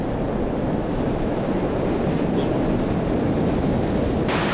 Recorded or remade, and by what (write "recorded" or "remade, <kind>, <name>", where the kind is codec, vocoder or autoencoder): recorded